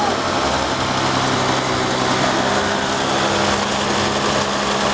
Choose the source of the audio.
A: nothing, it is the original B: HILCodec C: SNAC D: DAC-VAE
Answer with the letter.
A